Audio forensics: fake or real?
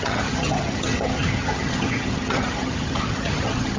fake